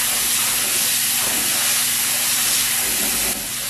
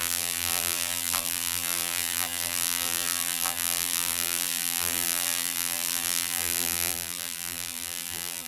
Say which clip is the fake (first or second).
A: second